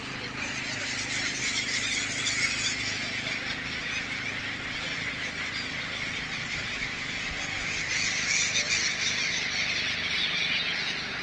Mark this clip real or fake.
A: real